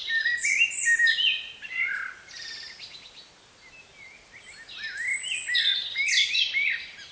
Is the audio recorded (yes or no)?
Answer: yes